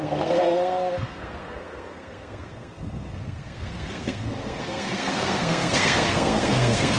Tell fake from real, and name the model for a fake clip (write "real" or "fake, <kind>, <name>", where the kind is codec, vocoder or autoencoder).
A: fake, codec, SNAC